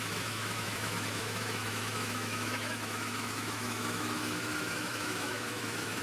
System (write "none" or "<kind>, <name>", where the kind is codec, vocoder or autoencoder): autoencoder, DAC-VAE